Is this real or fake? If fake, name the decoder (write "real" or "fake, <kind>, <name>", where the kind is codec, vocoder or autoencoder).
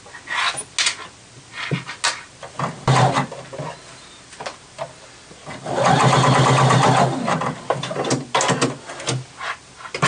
real